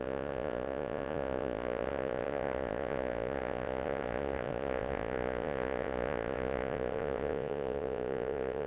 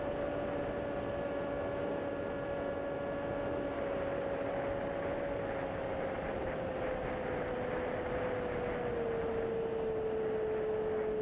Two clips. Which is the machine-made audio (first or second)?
first